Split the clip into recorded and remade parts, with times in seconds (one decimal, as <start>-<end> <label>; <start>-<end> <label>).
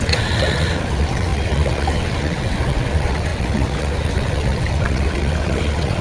0.0-6.0 remade